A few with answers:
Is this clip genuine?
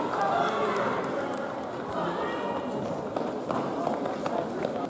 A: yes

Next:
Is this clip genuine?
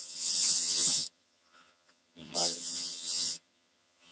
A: no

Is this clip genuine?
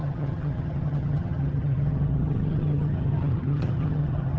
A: no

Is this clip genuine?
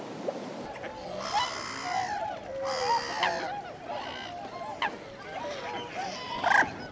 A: yes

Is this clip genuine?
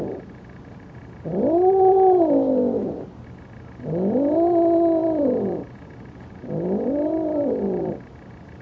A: yes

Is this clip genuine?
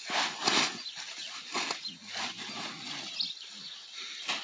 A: yes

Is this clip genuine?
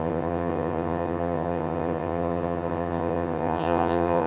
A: no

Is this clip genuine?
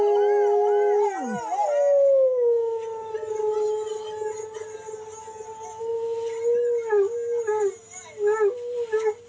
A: yes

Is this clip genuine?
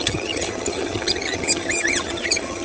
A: no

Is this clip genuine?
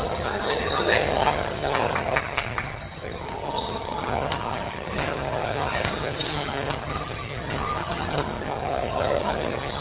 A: no